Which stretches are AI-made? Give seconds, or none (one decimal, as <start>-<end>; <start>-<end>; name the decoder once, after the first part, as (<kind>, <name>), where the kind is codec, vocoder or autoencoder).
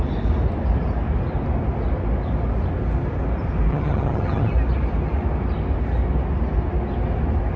3.7-4.5 (vocoder, HiFi-GAN)